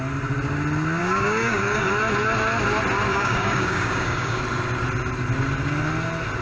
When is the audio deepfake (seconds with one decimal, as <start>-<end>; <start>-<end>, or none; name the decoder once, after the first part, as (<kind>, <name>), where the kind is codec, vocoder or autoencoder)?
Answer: 1.0-1.9 (codec, DAC); 3.1-4.4

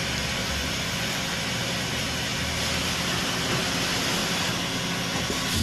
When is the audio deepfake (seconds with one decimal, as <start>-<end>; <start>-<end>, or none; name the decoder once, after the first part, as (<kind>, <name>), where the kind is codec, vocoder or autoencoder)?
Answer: 0.4-1.3 (vocoder, Vocos)

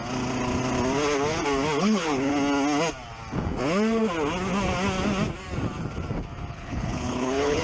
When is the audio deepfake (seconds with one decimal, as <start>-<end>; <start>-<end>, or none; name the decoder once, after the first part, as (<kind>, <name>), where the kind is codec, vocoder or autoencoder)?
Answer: 1.8-2.3 (codec, HILCodec); 6.5-7.6

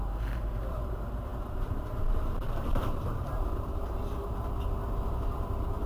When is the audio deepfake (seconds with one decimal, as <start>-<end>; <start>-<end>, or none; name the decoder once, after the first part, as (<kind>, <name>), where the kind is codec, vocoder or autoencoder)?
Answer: 0.0-5.9 (vocoder, BigVGAN v2)

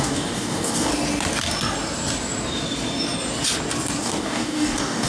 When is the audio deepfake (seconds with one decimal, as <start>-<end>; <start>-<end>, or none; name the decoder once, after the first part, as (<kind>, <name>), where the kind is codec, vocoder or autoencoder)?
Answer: 0.0-0.9 (codec, DAC); 4.0-5.1

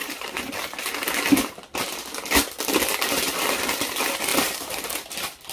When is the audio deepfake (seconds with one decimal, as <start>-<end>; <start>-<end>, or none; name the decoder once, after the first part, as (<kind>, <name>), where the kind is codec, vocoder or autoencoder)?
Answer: 0.0-0.5 (vocoder, BigVGAN v2); 4.3-5.1